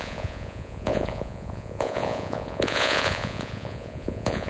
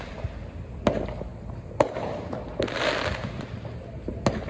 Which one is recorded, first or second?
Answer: second